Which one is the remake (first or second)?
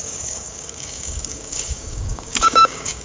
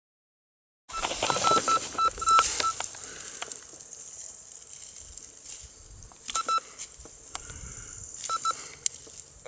first